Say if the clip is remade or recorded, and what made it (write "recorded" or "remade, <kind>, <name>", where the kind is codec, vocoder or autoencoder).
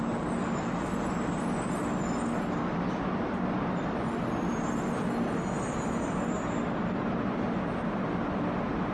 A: recorded